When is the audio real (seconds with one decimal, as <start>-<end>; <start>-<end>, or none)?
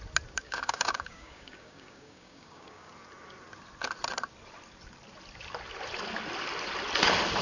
0.0-0.4; 2.9-7.4